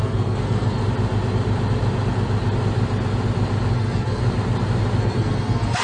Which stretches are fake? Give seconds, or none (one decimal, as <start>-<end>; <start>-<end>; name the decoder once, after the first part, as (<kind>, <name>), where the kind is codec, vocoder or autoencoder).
0.0-0.8 (codec, SNAC); 3.7-4.2; 5.0-5.8